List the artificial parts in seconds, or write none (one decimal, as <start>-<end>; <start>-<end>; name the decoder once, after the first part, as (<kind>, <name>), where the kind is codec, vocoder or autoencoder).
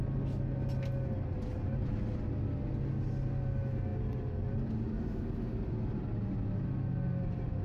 none